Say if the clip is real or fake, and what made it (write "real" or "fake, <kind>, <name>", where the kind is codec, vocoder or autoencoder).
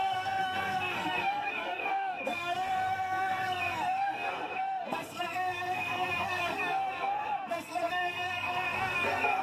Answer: fake, codec, SNAC